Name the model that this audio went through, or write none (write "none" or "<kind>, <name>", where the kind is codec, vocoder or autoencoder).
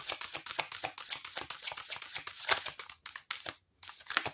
none